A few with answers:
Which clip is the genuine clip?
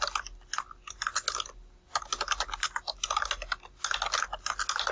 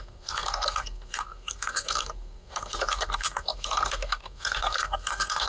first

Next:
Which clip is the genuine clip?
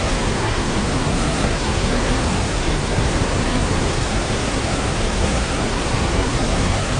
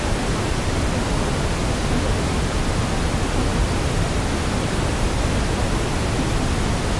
second